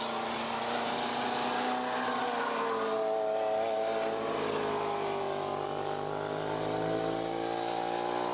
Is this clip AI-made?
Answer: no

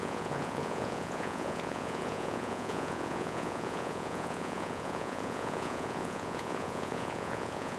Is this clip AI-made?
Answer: yes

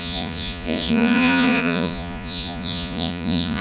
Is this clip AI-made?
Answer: yes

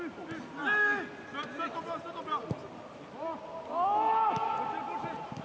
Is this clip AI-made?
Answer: no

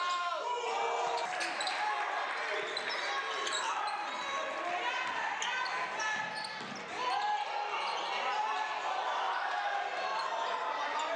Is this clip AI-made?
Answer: no